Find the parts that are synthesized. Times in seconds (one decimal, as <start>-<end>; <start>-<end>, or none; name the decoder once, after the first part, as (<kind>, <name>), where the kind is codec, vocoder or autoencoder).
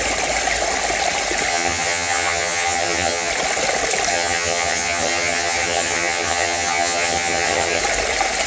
1.5-3.3 (vocoder, HiFi-GAN); 4.1-7.8